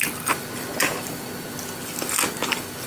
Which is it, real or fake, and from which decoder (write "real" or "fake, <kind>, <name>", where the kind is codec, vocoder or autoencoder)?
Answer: real